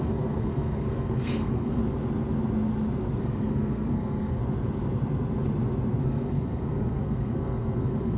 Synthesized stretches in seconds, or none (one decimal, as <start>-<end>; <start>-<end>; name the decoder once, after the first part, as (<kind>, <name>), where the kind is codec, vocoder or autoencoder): 0.0-1.8 (codec, SNAC); 3.2-4.4; 6.0-8.2